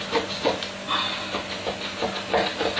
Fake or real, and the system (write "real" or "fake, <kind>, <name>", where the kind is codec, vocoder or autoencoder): real